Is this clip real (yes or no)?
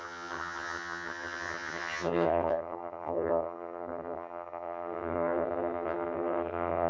no